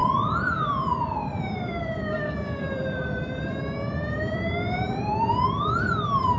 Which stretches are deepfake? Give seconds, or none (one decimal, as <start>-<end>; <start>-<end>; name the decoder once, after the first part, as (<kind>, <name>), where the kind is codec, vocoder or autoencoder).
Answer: 0.0-6.4 (vocoder, BigVGAN v2)